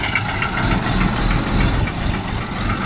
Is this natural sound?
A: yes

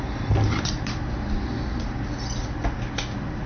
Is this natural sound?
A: yes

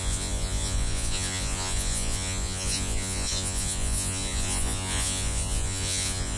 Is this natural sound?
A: no